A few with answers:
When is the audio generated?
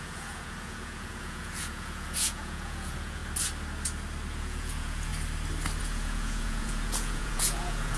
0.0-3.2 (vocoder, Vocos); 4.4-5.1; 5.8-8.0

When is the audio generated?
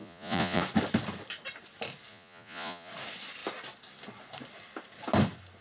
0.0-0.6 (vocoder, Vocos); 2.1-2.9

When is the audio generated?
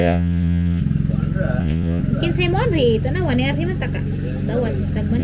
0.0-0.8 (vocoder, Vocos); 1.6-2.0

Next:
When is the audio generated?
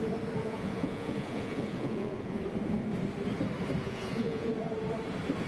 0.4-2.4 (vocoder, Vocos); 3.8-4.5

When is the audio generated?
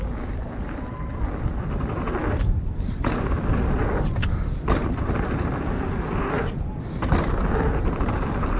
none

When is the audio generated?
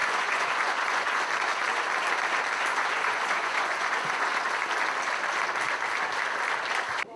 0.0-1.2 (vocoder, Vocos); 2.7-4.4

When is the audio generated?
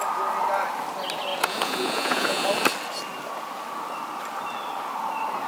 1.3-2.5 (vocoder, Vocos)